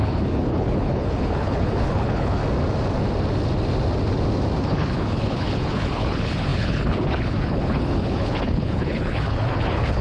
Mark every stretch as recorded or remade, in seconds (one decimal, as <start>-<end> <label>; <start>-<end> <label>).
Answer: 0.0-2.4 remade; 2.4-4.6 recorded; 4.6-10.0 remade